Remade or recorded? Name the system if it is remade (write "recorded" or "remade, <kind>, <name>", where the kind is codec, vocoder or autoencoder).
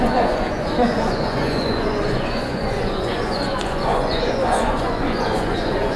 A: remade, vocoder, Vocos